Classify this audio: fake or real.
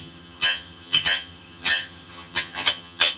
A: fake